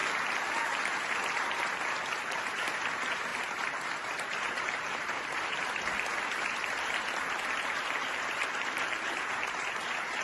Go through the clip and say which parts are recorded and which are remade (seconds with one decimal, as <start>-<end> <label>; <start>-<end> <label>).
0.0-0.6 recorded; 0.6-10.2 remade